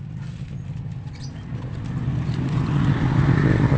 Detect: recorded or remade recorded